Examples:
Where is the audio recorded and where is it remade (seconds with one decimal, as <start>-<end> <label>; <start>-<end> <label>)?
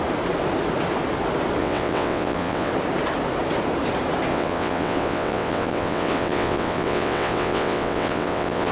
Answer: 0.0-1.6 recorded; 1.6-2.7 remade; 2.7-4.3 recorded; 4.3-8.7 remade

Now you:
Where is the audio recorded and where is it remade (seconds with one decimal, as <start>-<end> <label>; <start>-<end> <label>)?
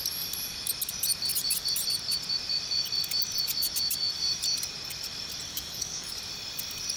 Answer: 0.0-5.5 recorded; 5.5-6.2 remade; 6.2-7.0 recorded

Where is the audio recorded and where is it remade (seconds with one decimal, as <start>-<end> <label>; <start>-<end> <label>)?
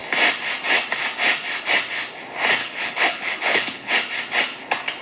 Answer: 0.0-2.6 recorded; 2.6-3.9 remade; 3.9-5.0 recorded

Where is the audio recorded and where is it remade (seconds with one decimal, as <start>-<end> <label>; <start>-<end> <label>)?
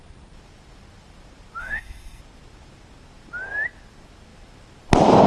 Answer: 0.0-1.6 recorded; 1.6-2.2 remade; 2.2-5.3 recorded